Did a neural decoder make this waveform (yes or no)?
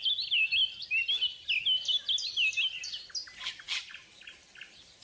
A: no